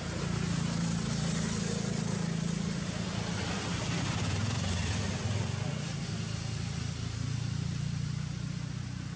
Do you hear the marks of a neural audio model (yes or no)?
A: no